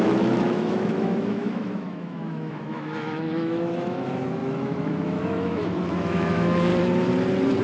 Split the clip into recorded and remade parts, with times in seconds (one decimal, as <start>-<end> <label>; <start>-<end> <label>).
0.0-6.7 remade; 6.7-7.6 recorded